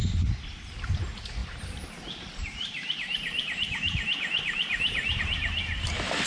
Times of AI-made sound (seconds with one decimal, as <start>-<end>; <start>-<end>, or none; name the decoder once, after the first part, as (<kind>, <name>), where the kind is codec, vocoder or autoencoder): 1.4-5.2 (vocoder, BigVGAN v2)